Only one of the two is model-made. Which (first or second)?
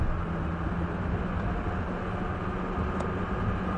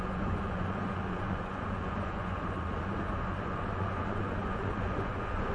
second